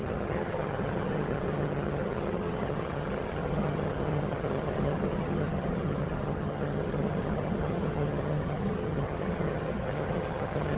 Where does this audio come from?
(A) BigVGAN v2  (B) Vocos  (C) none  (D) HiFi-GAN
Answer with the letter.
D